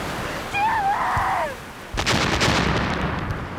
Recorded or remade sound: recorded